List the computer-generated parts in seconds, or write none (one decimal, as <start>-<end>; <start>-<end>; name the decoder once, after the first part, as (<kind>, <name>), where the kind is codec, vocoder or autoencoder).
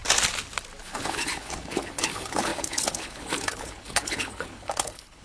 0.8-5.2 (codec, HILCodec)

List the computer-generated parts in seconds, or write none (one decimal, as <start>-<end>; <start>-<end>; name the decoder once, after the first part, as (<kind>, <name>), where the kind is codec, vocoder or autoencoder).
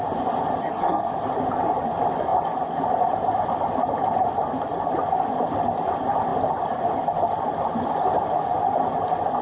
0.6-1.1 (codec, SNAC)